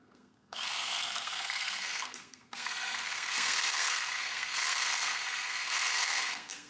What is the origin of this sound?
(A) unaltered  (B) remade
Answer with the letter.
B